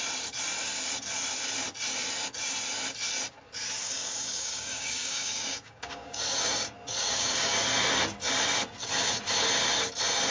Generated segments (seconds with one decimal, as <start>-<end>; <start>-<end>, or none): 3.8-6.2; 7.0-7.5